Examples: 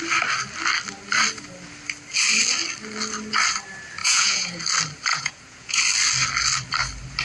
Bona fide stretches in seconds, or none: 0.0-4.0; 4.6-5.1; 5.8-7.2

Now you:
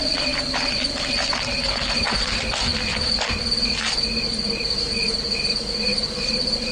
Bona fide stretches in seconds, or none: 0.0-6.7

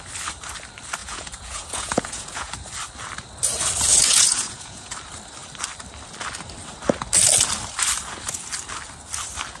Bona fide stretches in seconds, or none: 0.0-1.0; 2.5-3.9; 4.9-9.6

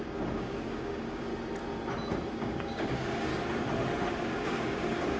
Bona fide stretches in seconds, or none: 1.3-2.3; 3.3-4.1

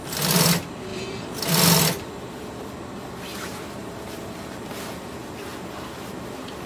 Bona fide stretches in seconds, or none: 0.0-3.3; 4.7-6.7